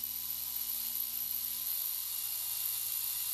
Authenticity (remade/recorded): recorded